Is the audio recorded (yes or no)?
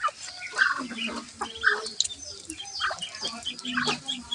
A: yes